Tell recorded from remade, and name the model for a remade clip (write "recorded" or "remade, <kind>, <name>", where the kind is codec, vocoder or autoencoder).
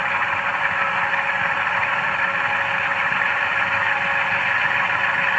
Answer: recorded